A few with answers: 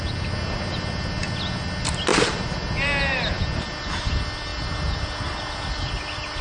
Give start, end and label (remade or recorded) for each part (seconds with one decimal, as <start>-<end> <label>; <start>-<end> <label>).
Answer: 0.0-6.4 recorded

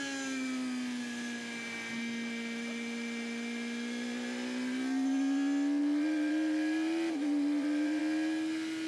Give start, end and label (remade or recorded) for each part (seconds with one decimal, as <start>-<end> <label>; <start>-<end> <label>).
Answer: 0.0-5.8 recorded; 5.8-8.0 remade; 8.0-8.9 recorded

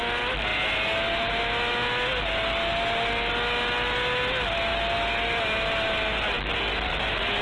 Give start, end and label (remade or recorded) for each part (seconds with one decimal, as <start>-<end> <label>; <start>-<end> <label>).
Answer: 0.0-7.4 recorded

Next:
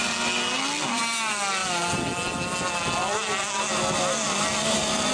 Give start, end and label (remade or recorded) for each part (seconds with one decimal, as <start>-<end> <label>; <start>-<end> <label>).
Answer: 0.0-5.1 recorded

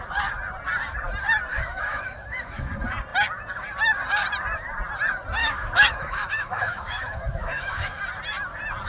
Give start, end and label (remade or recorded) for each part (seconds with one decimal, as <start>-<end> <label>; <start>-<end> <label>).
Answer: 0.0-1.5 recorded; 1.5-2.7 remade; 2.7-5.4 recorded; 5.4-8.0 remade; 8.0-8.9 recorded